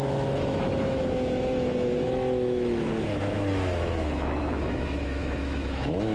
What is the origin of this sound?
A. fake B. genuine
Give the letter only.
A